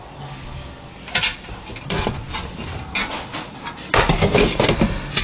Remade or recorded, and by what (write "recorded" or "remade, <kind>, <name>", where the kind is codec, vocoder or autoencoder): recorded